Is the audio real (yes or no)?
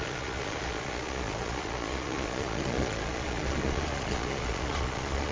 no